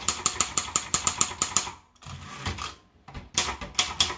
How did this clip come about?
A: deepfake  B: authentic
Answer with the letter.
B